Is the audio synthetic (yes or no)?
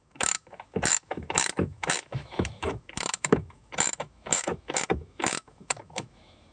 yes